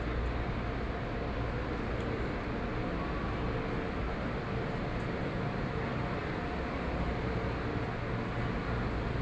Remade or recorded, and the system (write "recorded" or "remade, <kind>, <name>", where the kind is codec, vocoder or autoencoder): recorded